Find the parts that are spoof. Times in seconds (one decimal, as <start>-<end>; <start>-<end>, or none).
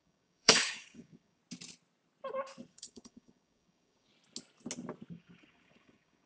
0.0-1.4; 2.7-4.1; 5.1-6.3